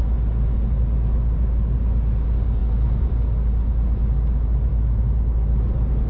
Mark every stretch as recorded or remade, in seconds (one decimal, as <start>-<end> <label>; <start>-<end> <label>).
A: 0.0-6.1 recorded